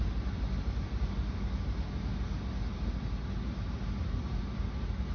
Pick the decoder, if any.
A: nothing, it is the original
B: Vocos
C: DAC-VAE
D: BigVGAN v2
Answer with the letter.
A